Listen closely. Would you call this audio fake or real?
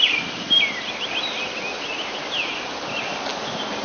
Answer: real